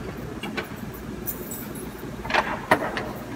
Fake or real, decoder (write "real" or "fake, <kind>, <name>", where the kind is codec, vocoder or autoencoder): real